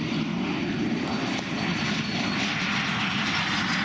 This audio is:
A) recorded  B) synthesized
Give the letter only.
A